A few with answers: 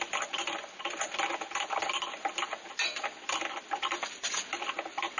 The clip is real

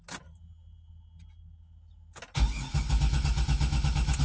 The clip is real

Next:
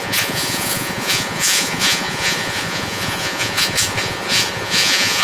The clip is fake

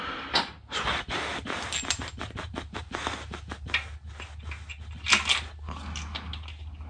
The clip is real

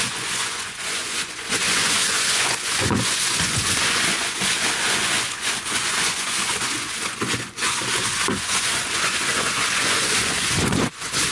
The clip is fake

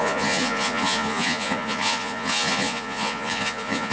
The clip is fake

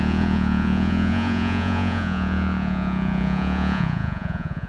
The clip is fake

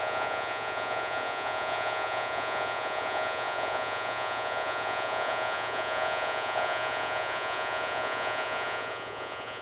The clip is fake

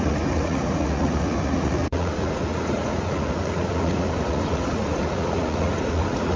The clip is fake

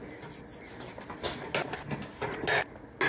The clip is real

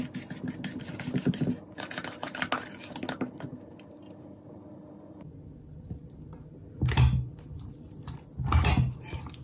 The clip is real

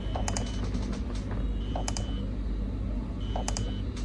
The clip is real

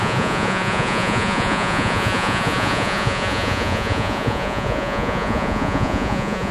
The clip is fake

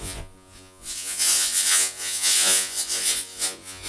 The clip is fake